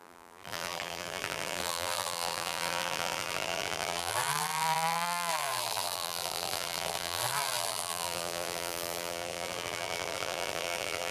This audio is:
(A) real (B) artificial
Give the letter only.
B